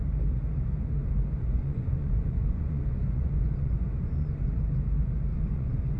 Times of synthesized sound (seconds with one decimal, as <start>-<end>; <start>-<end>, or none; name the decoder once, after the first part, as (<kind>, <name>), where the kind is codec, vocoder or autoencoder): 1.0-4.6 (vocoder, Vocos); 5.3-6.0